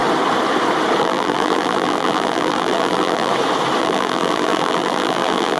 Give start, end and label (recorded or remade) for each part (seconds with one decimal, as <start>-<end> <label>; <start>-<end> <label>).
0.0-1.0 recorded; 1.0-3.3 remade; 3.3-3.8 recorded; 3.8-5.6 remade